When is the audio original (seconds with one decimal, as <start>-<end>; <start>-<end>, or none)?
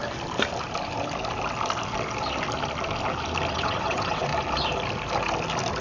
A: 0.0-3.5; 4.3-5.8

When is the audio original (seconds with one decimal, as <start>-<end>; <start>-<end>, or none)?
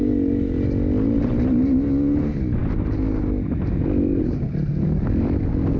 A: 0.0-5.8